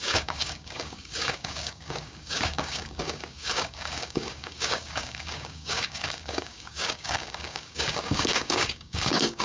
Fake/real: fake